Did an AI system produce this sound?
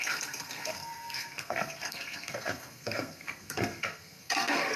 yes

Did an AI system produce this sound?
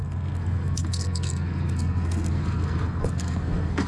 yes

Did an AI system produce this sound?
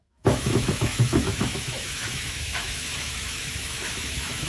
yes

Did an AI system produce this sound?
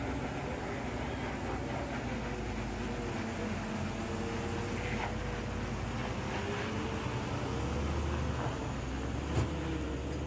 no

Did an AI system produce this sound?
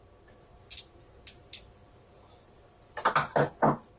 no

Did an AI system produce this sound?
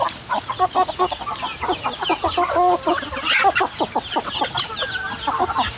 no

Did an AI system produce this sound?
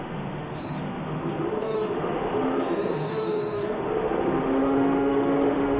yes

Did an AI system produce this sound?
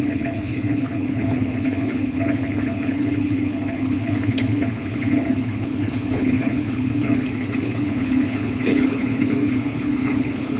yes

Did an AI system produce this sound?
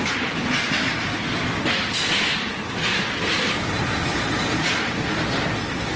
no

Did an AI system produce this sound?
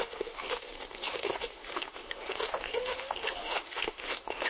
yes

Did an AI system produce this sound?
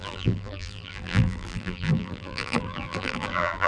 yes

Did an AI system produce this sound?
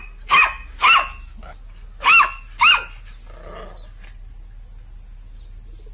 no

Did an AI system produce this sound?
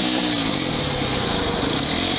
no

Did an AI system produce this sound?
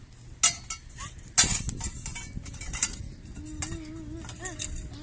no